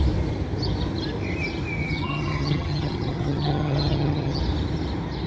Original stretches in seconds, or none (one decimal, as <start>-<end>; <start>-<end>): 0.0-1.8; 4.4-5.3